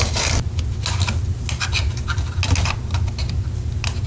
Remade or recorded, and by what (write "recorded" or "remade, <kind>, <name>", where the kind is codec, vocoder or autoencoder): recorded